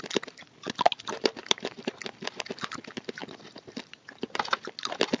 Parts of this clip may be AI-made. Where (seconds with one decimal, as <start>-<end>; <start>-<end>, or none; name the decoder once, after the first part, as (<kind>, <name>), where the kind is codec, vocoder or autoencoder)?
none

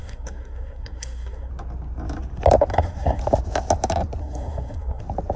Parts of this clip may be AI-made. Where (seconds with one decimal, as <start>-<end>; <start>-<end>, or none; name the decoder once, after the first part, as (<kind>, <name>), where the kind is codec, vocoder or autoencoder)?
0.0-1.5 (codec, SNAC); 2.7-3.2; 4.2-5.0

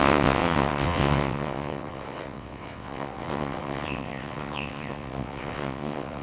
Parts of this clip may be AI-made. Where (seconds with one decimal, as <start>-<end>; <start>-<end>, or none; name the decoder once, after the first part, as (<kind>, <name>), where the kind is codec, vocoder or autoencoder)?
0.0-6.2 (vocoder, WaveNeXt)

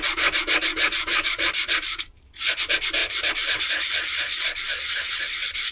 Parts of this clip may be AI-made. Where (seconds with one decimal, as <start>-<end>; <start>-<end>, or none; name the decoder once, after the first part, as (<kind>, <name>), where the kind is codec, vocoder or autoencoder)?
1.1-2.3 (vocoder, BigVGAN v2); 3.0-3.7

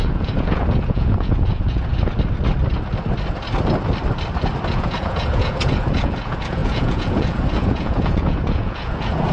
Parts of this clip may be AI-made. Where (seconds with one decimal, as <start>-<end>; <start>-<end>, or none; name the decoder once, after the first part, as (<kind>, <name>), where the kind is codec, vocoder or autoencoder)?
0.0-1.9 (vocoder, Vocos); 4.7-9.3

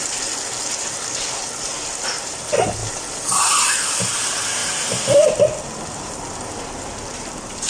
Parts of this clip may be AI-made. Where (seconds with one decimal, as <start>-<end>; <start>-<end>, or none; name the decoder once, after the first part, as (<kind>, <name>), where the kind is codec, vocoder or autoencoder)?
none

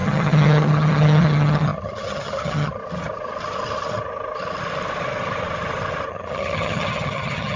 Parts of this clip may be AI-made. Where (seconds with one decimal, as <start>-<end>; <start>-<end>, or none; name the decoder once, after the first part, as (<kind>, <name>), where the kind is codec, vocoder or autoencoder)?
0.0-2.8 (vocoder, HiFi-GAN); 6.1-7.6

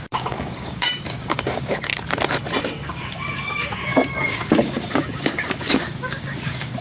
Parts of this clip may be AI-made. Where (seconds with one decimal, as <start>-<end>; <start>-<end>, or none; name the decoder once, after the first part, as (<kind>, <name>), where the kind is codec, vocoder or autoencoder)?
0.0-1.9 (codec, DAC); 2.6-6.8